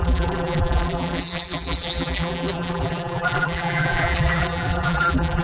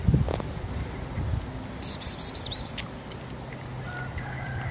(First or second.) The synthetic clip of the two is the first